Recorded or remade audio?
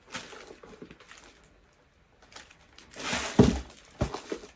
recorded